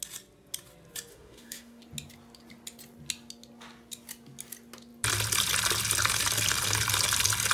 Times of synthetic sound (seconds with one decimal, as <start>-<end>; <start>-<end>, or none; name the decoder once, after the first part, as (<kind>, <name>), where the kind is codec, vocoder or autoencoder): 1.1-1.8 (autoencoder, DAC-VAE)